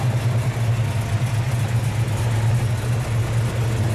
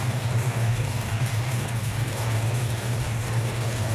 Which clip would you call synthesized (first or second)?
second